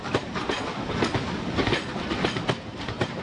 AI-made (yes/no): no